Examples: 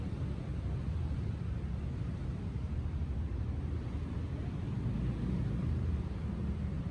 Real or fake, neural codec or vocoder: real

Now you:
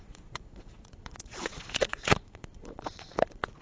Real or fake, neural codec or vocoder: fake, vocoder, Vocos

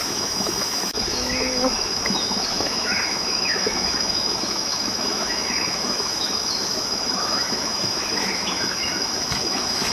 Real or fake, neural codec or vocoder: fake, autoencoder, DAC-VAE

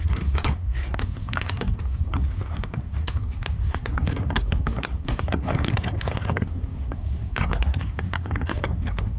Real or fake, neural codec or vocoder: fake, codec, SNAC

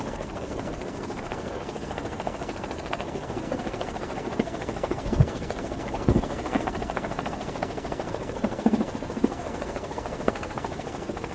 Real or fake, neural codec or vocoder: fake, codec, SNAC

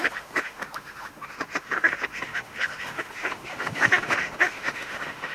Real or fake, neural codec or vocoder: fake, autoencoder, DAC-VAE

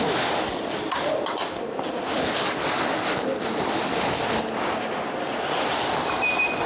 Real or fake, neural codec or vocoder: real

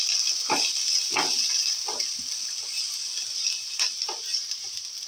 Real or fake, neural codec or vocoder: real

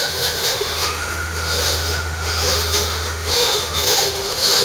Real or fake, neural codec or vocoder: fake, autoencoder, DAC-VAE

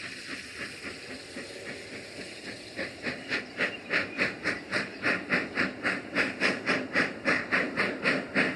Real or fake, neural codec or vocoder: fake, vocoder, BigVGAN v2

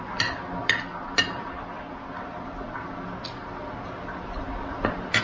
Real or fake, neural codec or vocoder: real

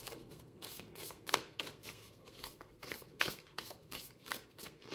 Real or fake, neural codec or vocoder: fake, codec, SNAC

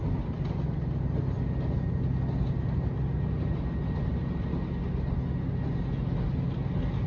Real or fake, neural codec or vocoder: real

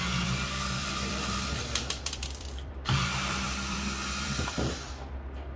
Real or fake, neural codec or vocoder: fake, vocoder, BigVGAN v2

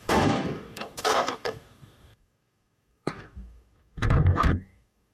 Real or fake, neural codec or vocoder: fake, codec, DAC